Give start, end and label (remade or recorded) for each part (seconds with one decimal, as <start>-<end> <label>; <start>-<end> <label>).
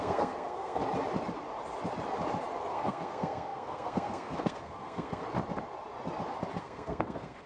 0.0-0.8 remade; 0.8-2.7 recorded; 2.7-5.2 remade; 5.2-6.6 recorded; 6.6-7.5 remade